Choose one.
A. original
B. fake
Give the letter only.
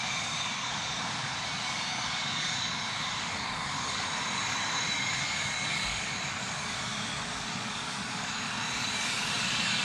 B